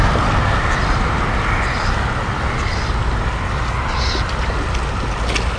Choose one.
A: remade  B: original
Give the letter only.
B